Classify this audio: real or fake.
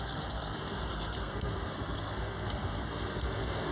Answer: fake